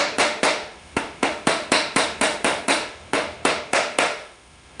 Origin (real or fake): fake